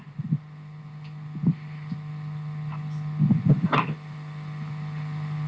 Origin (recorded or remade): recorded